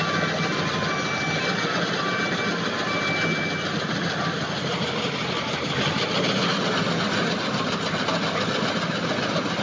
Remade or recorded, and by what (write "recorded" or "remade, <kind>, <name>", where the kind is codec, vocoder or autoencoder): recorded